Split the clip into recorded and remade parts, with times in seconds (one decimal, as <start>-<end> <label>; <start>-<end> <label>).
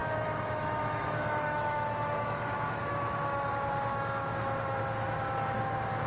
0.0-3.5 remade; 3.5-3.9 recorded; 3.9-4.8 remade; 4.8-6.1 recorded